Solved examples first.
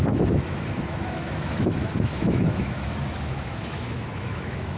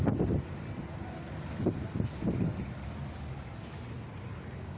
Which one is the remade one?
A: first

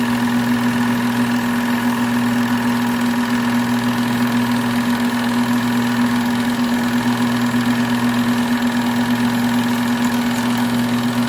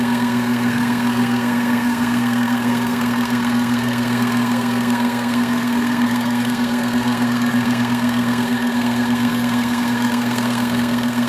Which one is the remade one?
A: second